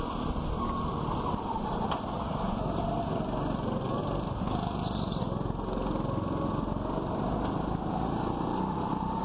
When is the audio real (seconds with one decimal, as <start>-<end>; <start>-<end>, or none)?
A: 4.0-9.2